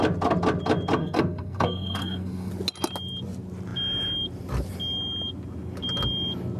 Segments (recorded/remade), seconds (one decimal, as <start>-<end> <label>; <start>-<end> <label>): 0.0-1.0 recorded; 1.0-2.5 remade; 2.5-6.6 recorded

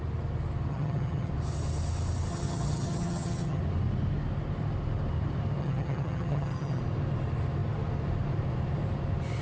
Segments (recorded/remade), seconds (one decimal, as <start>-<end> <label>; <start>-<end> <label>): 0.0-0.7 recorded; 0.7-1.3 remade; 1.3-2.3 recorded; 2.3-3.6 remade; 3.6-5.6 recorded; 5.6-6.8 remade; 6.8-9.4 recorded

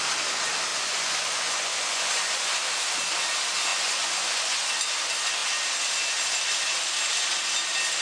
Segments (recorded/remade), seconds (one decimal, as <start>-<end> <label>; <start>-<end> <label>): 0.0-0.7 recorded; 0.7-2.5 remade; 2.5-3.7 recorded; 3.7-4.7 remade; 4.7-8.0 recorded

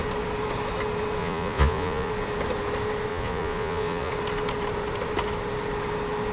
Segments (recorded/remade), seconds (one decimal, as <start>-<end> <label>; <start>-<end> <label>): 0.0-1.2 recorded; 1.2-2.1 remade; 2.1-3.1 recorded; 3.1-4.1 remade; 4.1-6.3 recorded

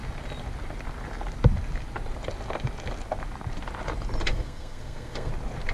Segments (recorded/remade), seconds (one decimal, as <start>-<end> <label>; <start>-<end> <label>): 0.0-4.3 recorded; 4.3-5.3 remade; 5.3-5.7 recorded